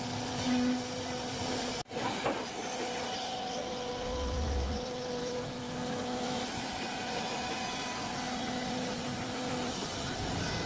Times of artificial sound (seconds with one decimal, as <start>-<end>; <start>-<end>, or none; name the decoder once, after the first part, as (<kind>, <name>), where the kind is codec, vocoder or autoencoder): 5.2-6.4 (autoencoder, DAC-VAE)